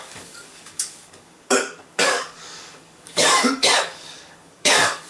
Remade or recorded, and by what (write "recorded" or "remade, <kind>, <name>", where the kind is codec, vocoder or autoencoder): remade, codec, DAC